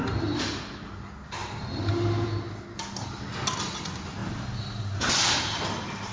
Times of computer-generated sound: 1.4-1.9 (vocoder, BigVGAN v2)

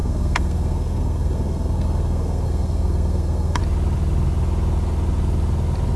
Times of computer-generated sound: 0.0-3.6 (codec, SNAC)

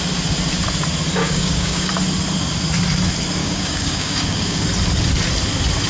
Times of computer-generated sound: 1.2-1.9 (codec, DAC); 3.4-4.6